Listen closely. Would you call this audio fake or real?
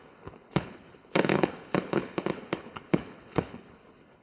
fake